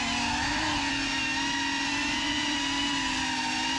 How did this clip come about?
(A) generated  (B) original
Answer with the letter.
B